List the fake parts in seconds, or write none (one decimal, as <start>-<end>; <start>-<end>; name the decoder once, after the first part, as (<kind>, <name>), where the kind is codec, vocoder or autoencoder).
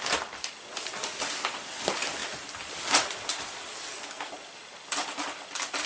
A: 3.7-4.3 (codec, SNAC)